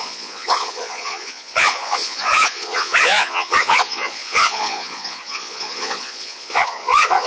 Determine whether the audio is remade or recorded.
remade